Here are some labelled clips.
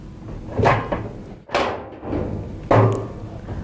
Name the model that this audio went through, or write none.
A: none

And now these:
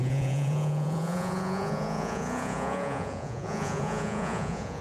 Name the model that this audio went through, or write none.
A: vocoder, Vocos